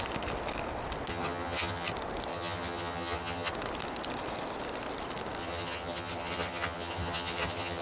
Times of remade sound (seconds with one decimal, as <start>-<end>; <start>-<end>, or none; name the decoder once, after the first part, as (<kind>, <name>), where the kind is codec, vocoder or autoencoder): 1.1-1.9 (vocoder, HiFi-GAN); 2.3-3.5; 5.4-7.8